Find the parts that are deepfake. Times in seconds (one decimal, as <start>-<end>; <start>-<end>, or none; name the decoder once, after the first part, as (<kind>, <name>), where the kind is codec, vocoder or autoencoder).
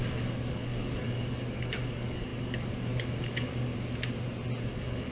0.0-3.7 (codec, DAC); 4.6-5.1